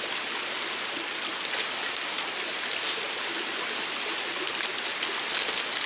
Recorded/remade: recorded